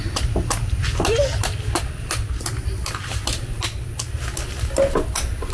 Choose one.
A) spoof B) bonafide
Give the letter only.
B